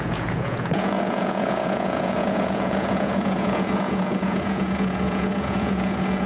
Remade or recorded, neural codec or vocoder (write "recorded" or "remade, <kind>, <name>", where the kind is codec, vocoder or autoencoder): remade, vocoder, Vocos